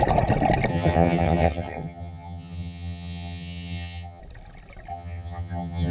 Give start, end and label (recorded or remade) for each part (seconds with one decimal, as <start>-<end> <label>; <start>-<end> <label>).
0.0-0.7 recorded; 0.7-4.2 remade; 4.2-4.9 recorded; 4.9-5.9 remade